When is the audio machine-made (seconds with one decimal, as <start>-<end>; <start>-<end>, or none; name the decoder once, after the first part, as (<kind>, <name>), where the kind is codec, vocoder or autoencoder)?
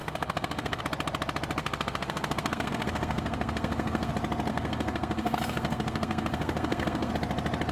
0.0-0.8 (codec, SNAC); 1.6-4.1; 4.5-7.1